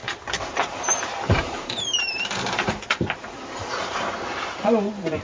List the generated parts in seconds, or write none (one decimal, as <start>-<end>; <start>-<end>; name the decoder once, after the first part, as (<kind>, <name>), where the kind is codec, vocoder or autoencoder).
0.0-5.2 (vocoder, BigVGAN v2)